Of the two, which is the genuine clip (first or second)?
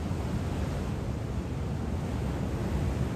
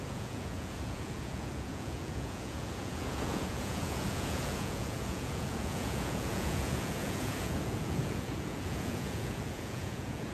first